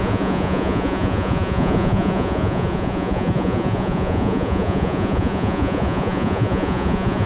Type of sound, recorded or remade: remade